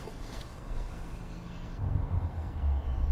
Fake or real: fake